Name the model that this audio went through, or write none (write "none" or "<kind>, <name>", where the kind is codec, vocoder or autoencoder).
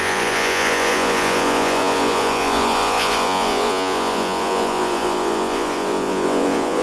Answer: vocoder, Vocos